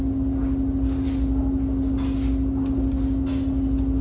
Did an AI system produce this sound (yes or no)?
no